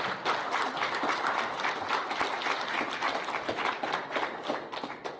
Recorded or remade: recorded